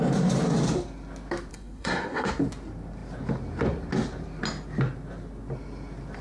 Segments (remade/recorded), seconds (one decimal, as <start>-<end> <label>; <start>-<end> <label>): 0.0-1.5 recorded; 1.5-2.3 remade; 2.3-6.2 recorded